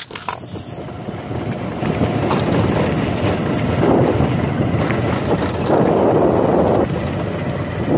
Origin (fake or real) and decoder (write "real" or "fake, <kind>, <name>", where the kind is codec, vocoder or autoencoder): real